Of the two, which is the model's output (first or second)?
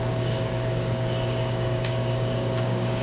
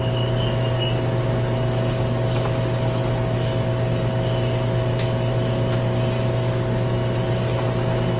first